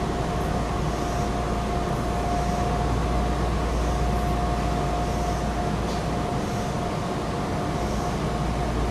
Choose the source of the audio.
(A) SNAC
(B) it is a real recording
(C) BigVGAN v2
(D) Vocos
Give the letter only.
B